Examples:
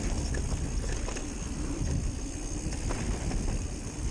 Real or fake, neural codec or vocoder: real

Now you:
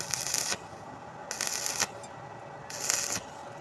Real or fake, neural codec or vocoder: real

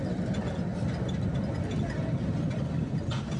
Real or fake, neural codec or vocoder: real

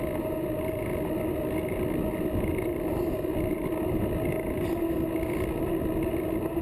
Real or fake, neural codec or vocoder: real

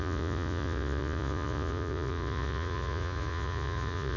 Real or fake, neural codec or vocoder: fake, vocoder, Vocos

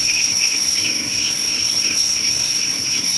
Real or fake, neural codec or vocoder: fake, codec, SNAC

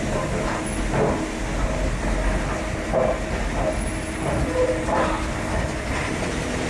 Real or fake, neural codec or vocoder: real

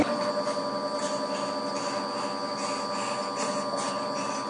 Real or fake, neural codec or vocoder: real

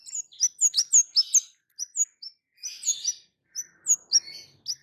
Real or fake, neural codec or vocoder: real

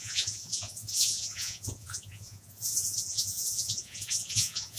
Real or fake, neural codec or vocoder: fake, vocoder, Vocos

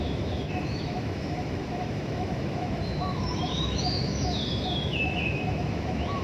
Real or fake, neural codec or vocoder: fake, autoencoder, DAC-VAE